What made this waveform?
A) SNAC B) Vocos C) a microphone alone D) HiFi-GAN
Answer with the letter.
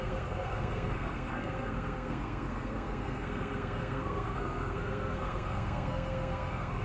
A